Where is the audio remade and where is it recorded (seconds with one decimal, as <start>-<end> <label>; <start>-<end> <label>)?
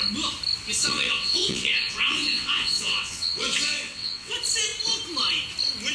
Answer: 0.0-0.8 recorded; 0.8-4.3 remade; 4.3-5.9 recorded